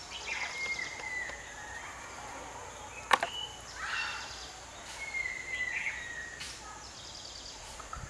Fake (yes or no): no